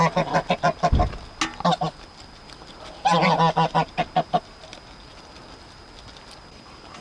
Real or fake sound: real